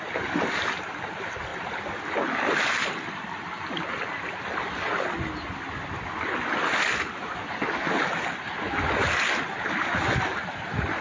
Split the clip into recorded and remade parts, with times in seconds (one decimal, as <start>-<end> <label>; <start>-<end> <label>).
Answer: 0.0-11.0 recorded